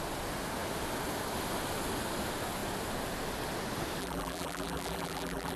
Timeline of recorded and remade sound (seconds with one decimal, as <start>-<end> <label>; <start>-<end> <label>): 0.0-4.0 recorded; 4.0-5.6 remade